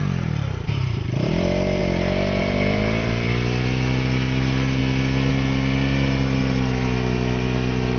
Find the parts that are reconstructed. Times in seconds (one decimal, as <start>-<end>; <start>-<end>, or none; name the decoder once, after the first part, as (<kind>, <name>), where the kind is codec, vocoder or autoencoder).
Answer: 0.0-1.8 (vocoder, BigVGAN v2); 2.4-4.8; 5.3-6.4